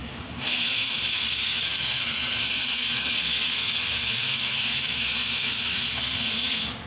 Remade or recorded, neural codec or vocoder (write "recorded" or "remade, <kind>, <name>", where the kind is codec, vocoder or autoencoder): remade, codec, SNAC